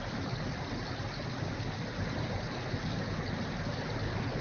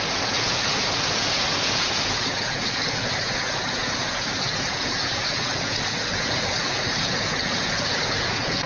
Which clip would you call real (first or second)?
first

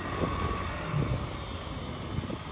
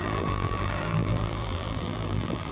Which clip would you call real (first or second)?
first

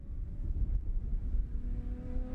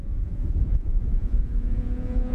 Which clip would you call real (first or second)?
first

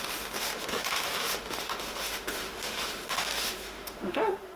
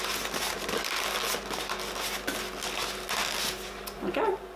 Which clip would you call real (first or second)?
second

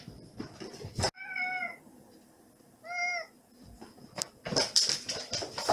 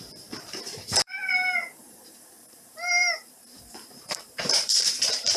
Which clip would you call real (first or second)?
first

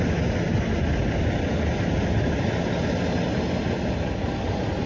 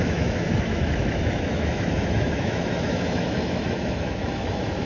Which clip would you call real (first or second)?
first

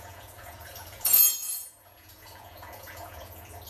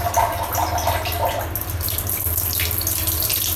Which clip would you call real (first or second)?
second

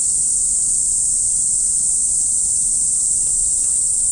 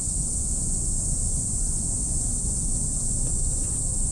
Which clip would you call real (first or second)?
first